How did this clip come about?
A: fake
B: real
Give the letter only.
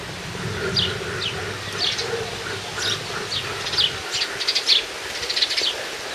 B